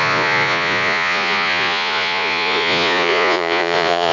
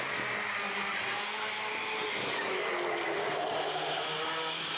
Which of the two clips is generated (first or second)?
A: first